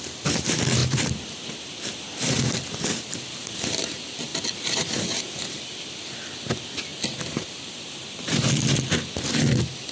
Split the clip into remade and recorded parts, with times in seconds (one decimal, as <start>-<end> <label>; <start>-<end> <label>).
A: 0.0-0.8 recorded; 0.8-2.2 remade; 2.2-4.3 recorded; 4.3-5.2 remade; 5.2-6.9 recorded; 6.9-9.9 remade